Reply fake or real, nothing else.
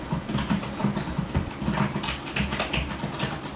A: real